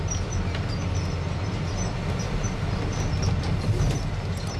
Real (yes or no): yes